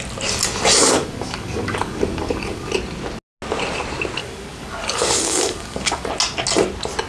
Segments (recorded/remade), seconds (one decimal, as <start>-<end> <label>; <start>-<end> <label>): 0.0-0.8 recorded; 0.8-2.7 remade; 2.7-4.2 recorded; 4.2-6.1 remade; 6.1-7.1 recorded